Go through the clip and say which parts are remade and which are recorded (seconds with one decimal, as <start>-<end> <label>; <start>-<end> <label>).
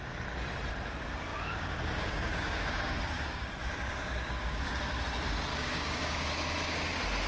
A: 0.0-1.3 recorded; 1.3-5.0 remade; 5.0-5.5 recorded; 5.5-6.3 remade; 6.3-7.3 recorded